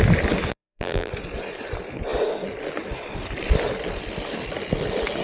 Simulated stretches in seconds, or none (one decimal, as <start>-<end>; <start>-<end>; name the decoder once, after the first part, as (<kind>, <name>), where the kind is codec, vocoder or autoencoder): 0.5-1.1 (vocoder, BigVGAN v2)